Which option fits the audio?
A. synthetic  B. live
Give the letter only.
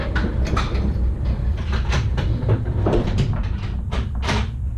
A